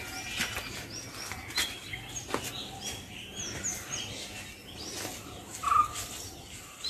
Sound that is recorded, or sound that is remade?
recorded